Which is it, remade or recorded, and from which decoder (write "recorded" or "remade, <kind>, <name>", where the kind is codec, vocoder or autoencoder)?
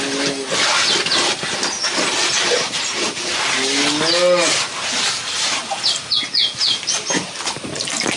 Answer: recorded